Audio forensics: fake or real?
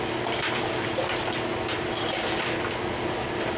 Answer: real